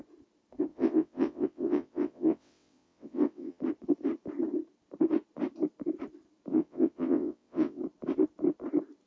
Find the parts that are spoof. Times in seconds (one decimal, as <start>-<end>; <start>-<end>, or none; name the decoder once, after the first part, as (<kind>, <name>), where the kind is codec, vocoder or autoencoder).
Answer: 0.7-3.6 (vocoder, WaveNeXt); 6.5-7.8

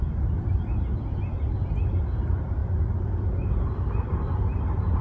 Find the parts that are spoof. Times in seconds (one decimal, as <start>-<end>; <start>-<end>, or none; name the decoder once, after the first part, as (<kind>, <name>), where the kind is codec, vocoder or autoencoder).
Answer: none

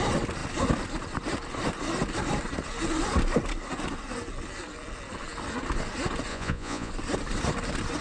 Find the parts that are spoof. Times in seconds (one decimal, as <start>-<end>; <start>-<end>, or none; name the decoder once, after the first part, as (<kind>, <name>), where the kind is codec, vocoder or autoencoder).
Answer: 6.3-6.9 (vocoder, Vocos)

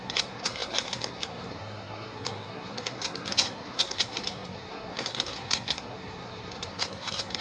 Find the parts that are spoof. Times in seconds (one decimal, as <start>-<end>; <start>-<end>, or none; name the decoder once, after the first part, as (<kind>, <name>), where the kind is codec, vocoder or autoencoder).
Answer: 0.0-7.4 (codec, SNAC)

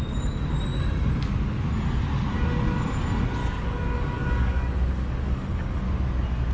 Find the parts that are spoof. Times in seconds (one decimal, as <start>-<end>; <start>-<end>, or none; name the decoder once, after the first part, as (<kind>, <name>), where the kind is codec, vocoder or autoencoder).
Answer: 3.4-5.8 (codec, DAC)

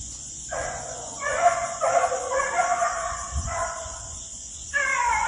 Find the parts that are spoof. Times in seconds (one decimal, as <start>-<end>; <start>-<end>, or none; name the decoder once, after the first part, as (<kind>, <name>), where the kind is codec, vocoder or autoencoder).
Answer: 0.0-5.3 (vocoder, Vocos)

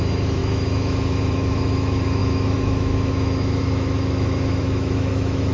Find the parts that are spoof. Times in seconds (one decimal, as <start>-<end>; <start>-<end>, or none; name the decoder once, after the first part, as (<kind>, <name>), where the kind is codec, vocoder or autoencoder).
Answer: 0.0-5.5 (autoencoder, DAC-VAE)